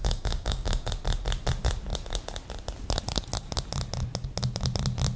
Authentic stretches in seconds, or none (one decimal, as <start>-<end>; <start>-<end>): 0.9-5.2